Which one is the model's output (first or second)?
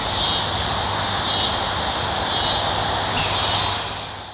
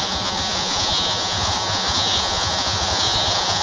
second